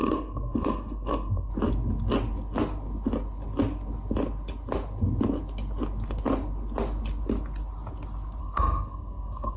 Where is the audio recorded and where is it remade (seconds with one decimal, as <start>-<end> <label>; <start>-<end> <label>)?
0.0-1.5 remade; 1.5-8.4 recorded; 8.4-9.6 remade